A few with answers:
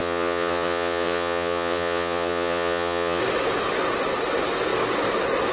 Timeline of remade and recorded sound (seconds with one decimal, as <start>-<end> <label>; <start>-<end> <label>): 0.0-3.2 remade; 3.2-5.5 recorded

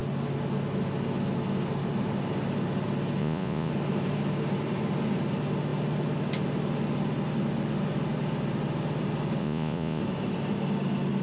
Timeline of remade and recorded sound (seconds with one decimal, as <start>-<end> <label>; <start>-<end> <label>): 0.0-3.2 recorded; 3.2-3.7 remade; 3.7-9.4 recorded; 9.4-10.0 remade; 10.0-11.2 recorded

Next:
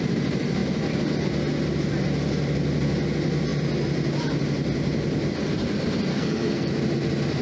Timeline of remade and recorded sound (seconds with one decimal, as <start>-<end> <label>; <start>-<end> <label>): 0.0-6.1 recorded; 6.1-6.7 remade; 6.7-7.4 recorded